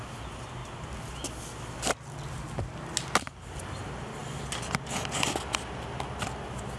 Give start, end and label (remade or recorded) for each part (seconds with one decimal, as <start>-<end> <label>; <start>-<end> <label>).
0.0-6.8 recorded